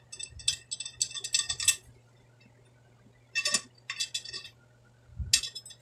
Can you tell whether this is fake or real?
real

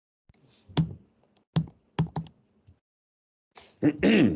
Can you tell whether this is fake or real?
real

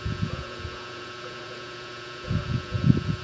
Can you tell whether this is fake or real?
fake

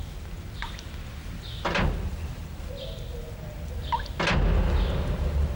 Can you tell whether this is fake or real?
real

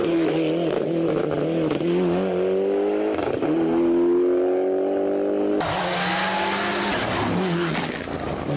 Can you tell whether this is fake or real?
real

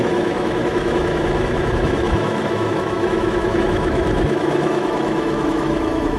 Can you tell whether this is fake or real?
fake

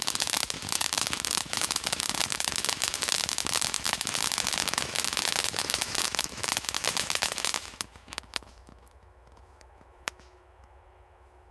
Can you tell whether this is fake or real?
fake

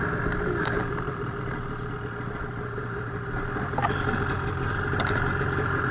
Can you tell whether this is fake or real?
real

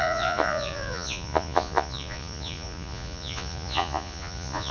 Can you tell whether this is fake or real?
fake